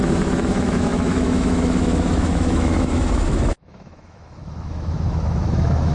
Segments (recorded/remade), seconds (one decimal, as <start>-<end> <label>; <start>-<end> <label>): 0.0-5.9 remade